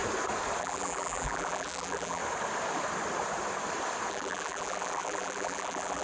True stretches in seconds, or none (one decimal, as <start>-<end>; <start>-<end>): 0.0-0.6; 2.2-4.1